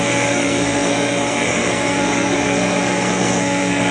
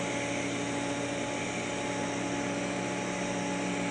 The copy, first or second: first